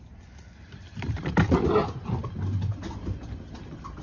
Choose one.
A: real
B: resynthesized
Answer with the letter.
A